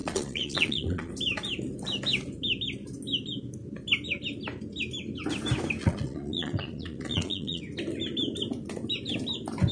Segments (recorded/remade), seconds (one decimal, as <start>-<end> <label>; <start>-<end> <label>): 0.0-1.1 remade; 1.1-5.8 recorded; 5.8-7.6 remade; 7.6-9.7 recorded